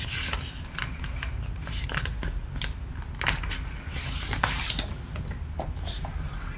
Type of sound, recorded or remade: recorded